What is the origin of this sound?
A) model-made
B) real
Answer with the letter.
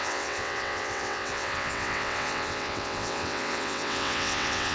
A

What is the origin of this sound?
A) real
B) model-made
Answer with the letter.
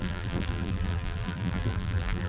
B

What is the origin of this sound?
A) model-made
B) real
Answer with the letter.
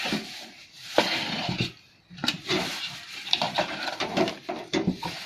A